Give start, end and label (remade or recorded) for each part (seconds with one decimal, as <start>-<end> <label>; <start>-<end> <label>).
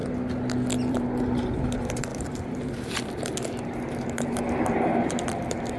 0.0-0.9 recorded; 0.9-5.8 remade